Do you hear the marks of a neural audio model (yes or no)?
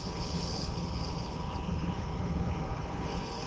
yes